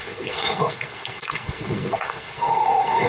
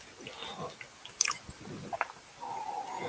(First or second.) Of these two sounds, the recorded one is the second